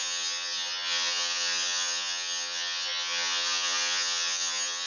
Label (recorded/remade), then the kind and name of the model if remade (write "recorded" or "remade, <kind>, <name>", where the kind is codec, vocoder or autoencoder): remade, vocoder, HiFi-GAN